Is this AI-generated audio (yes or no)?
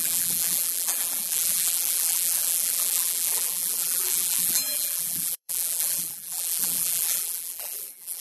yes